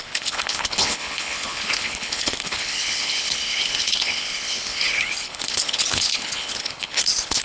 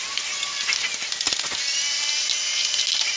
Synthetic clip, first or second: first